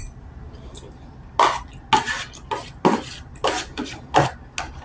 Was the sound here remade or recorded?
recorded